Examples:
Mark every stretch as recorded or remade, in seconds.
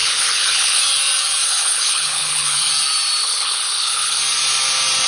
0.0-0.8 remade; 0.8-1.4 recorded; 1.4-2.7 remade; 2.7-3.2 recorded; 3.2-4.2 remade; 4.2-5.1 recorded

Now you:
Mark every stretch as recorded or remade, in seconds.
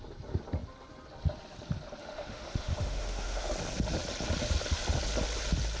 0.0-2.0 recorded; 2.0-3.5 remade; 3.5-5.8 recorded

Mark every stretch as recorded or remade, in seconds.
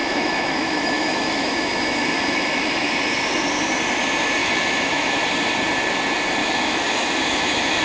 0.0-2.9 remade; 2.9-4.4 recorded; 4.4-5.2 remade; 5.2-6.4 recorded; 6.4-7.8 remade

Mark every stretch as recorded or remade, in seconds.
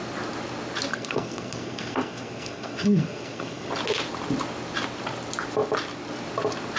0.0-0.9 recorded; 0.9-3.7 remade; 3.7-6.8 recorded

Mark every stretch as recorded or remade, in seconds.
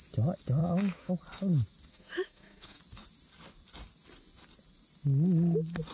0.0-0.6 recorded; 0.6-1.1 remade; 1.1-1.9 recorded; 1.9-2.8 remade; 2.8-5.9 recorded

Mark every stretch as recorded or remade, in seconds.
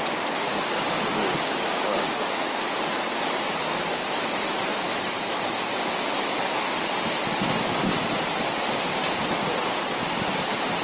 0.0-0.5 recorded; 0.5-2.3 remade; 2.3-10.8 recorded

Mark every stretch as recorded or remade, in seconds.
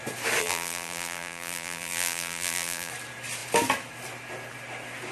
0.0-0.4 recorded; 0.4-2.9 remade; 2.9-5.1 recorded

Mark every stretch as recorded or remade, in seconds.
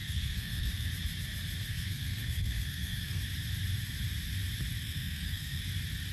0.0-0.9 remade; 0.9-1.7 recorded; 1.7-3.2 remade; 3.2-4.8 recorded; 4.8-5.6 remade; 5.6-6.1 recorded